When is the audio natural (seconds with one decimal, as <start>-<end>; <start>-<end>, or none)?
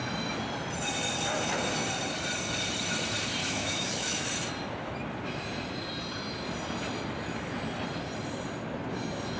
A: 0.0-3.4; 4.2-9.4